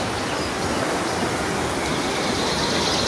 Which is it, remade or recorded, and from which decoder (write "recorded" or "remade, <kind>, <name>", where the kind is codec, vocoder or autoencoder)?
recorded